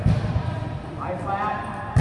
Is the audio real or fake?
real